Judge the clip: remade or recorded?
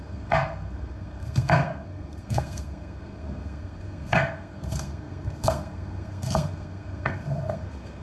remade